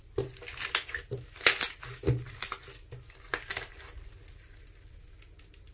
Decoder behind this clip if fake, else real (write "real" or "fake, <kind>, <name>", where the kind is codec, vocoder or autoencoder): real